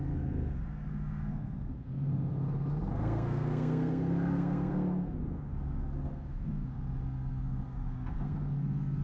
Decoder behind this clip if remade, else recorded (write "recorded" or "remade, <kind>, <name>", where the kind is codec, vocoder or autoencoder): remade, codec, SNAC